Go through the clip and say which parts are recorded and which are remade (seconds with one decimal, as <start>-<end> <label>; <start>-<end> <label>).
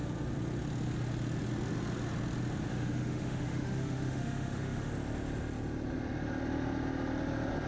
0.0-2.7 recorded; 2.7-4.9 remade; 4.9-7.7 recorded